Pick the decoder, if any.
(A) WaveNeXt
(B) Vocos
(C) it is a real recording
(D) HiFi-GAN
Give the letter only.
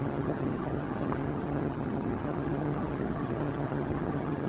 D